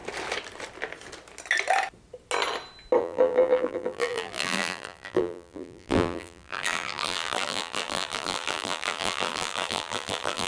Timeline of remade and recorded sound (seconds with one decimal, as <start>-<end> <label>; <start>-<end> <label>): 0.0-3.0 recorded; 3.0-10.5 remade